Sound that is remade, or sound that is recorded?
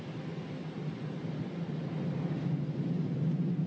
recorded